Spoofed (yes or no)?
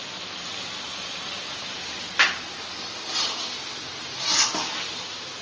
no